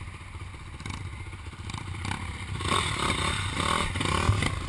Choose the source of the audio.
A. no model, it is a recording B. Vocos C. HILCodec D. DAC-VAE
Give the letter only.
A